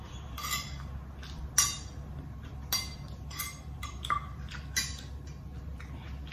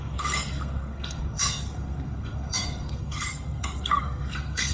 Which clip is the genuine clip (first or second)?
first